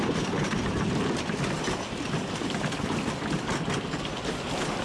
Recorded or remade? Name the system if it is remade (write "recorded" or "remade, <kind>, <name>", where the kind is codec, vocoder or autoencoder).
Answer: recorded